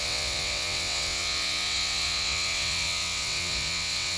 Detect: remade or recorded remade